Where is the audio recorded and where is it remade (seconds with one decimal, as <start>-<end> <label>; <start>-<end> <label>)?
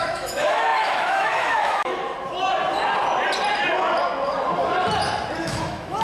0.0-2.0 remade; 2.0-5.4 recorded; 5.4-6.0 remade